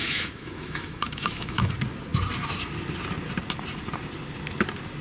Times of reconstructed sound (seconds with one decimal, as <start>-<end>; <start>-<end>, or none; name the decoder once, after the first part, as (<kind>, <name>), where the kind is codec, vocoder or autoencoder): 0.0-1.7 (autoencoder, DAC-VAE)